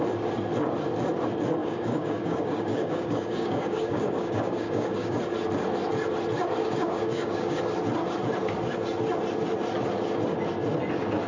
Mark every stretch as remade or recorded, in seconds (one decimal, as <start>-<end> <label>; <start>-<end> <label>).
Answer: 0.0-1.6 recorded; 1.6-5.2 remade; 5.2-6.6 recorded; 6.6-7.6 remade; 7.6-11.3 recorded